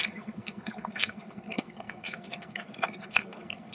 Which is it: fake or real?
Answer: fake